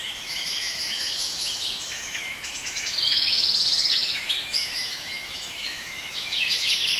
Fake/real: fake